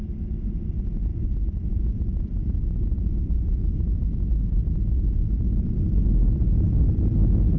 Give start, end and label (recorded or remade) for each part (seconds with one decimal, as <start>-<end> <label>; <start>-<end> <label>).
0.0-1.1 recorded; 1.1-5.7 remade; 5.7-7.6 recorded